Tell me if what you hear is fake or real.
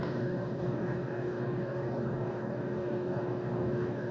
fake